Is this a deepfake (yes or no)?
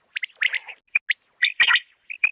no